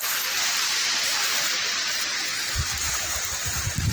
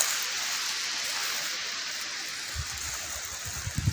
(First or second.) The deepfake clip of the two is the first